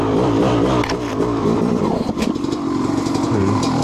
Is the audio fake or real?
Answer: fake